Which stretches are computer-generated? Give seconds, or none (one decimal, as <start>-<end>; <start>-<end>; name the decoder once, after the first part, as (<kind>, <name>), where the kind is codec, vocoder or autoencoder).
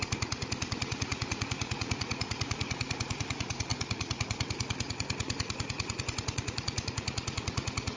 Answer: 0.0-8.0 (vocoder, Vocos)